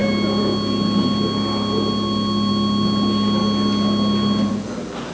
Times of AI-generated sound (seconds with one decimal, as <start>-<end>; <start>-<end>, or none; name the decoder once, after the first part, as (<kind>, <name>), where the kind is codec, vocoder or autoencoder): none